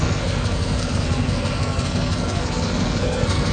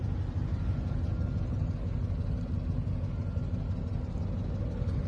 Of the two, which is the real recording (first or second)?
second